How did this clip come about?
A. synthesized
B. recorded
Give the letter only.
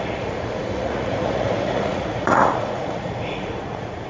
A